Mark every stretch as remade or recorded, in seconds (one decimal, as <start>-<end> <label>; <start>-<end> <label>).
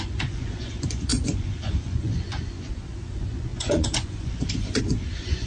0.0-5.5 remade